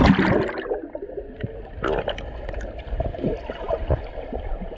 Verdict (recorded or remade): recorded